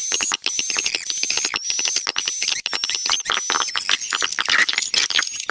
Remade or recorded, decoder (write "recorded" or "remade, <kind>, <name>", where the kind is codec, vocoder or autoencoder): recorded